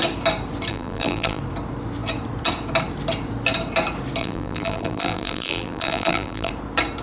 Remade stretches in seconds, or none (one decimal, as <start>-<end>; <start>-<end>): 0.7-1.4; 4.2-6.5